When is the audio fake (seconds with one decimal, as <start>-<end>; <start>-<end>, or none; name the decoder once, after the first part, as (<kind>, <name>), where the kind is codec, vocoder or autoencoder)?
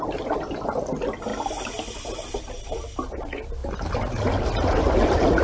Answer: none